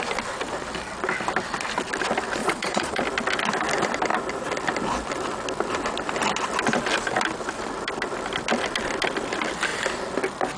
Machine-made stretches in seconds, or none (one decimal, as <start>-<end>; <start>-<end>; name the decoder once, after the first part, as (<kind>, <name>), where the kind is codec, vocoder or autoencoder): 2.4-3.0 (vocoder, Vocos)

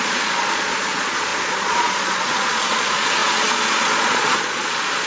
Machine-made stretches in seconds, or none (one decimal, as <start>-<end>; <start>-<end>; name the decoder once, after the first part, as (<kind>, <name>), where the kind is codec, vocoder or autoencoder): 0.0-5.1 (vocoder, Vocos)

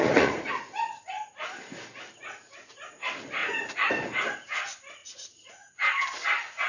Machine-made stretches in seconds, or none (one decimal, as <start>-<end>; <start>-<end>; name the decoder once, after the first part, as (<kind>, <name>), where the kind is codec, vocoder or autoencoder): 0.0-0.5 (vocoder, Vocos); 2.2-2.9; 3.4-3.9; 5.0-5.7

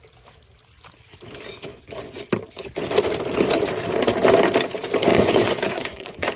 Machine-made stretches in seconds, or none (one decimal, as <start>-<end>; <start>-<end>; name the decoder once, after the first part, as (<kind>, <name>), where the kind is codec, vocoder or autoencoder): 1.7-2.3 (vocoder, Vocos); 5.1-6.4